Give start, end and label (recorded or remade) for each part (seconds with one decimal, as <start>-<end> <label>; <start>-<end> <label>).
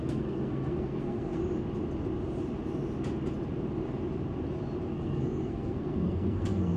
0.0-1.4 remade; 1.4-4.9 recorded; 4.9-6.8 remade